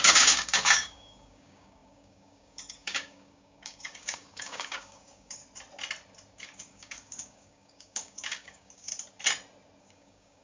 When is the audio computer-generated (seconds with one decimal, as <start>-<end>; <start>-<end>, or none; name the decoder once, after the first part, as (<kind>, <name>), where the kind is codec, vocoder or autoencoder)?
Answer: 0.0-5.4 (codec, DAC); 6.3-8.9; 9.8-10.4

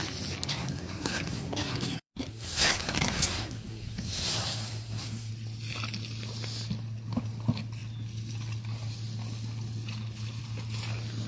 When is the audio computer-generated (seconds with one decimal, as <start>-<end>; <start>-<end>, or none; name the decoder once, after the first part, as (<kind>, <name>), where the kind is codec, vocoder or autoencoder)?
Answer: 0.5-5.3 (codec, SNAC)

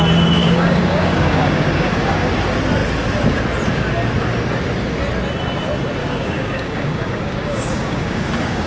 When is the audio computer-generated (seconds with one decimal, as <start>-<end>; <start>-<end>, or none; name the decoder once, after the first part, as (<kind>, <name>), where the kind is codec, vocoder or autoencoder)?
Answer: 0.4-2.3 (codec, DAC); 6.0-8.7

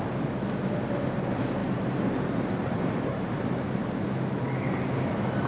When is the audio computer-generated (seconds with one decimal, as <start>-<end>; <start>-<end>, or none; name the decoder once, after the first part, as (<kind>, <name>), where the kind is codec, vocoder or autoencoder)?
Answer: 1.6-3.9 (vocoder, BigVGAN v2)